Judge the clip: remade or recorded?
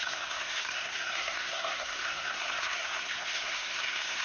remade